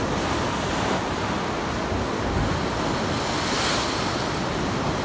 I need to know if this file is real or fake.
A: real